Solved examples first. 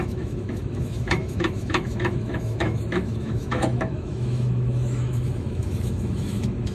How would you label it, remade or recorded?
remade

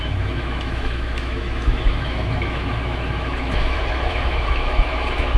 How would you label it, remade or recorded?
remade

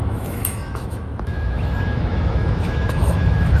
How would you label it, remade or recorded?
remade